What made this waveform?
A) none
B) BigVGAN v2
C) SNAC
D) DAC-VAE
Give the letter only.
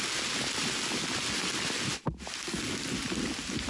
A